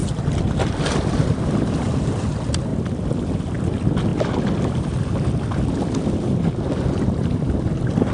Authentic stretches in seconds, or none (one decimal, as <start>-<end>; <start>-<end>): 2.7-3.4; 4.1-5.5